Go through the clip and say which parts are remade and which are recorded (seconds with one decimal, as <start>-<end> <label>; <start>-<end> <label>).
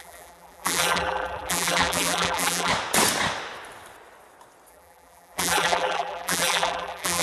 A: 0.0-2.7 remade; 2.7-4.7 recorded; 4.7-7.2 remade